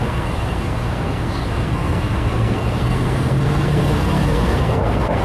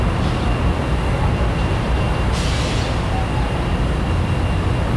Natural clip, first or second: second